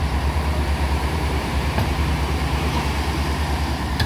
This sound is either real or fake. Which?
fake